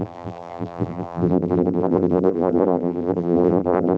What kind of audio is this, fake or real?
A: fake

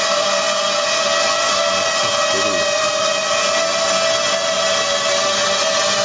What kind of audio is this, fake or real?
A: real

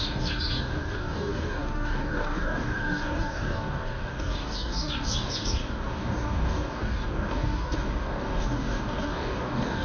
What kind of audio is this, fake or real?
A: fake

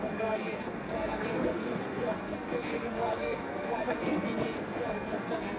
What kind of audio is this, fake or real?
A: fake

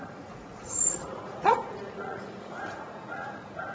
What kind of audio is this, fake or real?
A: fake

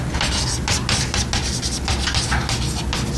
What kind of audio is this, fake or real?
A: real